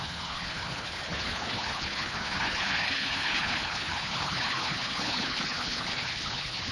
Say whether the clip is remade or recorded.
remade